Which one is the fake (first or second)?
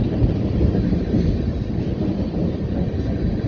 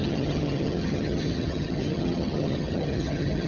second